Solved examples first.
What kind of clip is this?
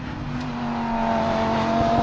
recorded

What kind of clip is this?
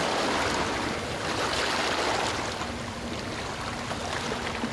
recorded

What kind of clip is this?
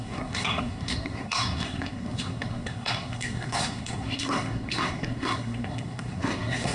remade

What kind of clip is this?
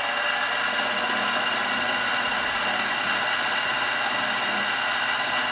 recorded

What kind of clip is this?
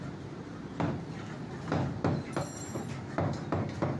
recorded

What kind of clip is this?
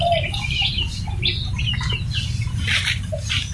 recorded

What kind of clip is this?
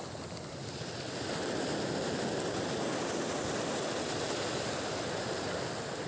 recorded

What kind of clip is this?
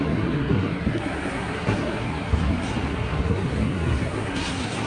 remade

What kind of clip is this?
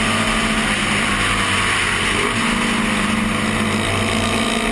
recorded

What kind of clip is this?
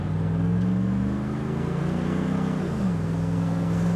remade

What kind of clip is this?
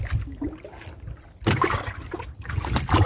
recorded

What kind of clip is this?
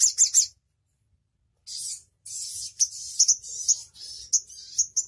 recorded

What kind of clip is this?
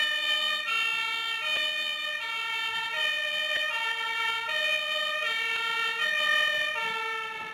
recorded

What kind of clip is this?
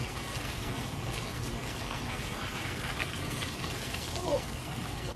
remade